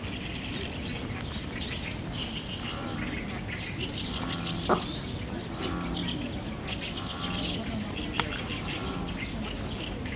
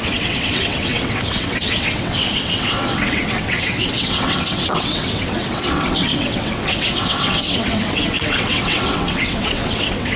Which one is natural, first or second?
first